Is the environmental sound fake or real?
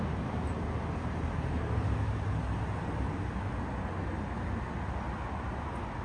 real